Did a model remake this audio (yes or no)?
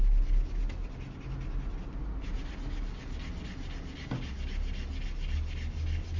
no